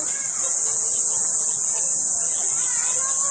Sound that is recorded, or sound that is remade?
recorded